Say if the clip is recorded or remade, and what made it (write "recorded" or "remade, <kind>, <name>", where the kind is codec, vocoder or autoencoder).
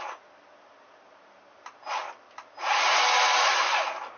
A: recorded